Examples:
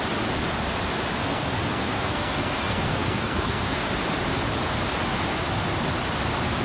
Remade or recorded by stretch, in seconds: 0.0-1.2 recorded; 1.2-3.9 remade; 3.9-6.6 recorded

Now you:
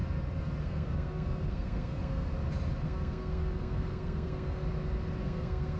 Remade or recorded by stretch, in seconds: 0.0-0.6 recorded; 0.6-2.3 remade; 2.3-2.8 recorded; 2.8-4.6 remade; 4.6-5.2 recorded; 5.2-5.8 remade